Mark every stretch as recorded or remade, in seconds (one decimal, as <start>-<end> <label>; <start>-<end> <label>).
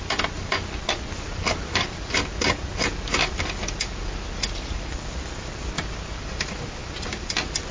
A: 0.0-7.7 recorded